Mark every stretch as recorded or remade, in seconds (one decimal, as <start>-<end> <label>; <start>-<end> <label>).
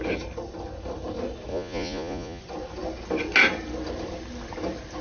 0.0-1.5 recorded; 1.5-2.4 remade; 2.4-5.0 recorded